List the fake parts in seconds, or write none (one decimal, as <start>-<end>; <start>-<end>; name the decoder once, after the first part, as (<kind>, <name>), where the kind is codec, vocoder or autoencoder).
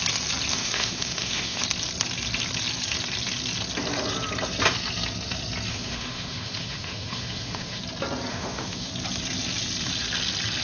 0.5-1.6 (autoencoder, DAC-VAE); 5.7-7.8; 8.3-8.9